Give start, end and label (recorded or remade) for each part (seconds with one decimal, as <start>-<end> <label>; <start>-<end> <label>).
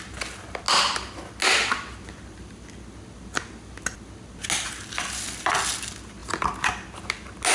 0.0-7.5 recorded